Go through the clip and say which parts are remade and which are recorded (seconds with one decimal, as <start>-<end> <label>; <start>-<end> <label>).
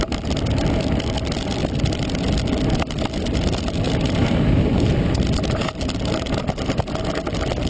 0.0-7.7 recorded